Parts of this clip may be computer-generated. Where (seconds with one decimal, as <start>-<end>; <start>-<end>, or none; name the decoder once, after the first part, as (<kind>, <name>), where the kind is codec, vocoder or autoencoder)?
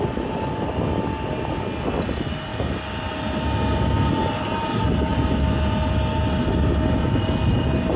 none